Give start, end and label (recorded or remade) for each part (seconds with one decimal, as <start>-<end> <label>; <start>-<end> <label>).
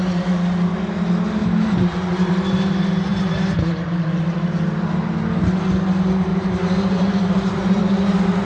0.0-1.4 recorded; 1.4-2.3 remade; 2.3-3.1 recorded; 3.1-3.9 remade; 3.9-6.3 recorded; 6.3-7.8 remade; 7.8-8.4 recorded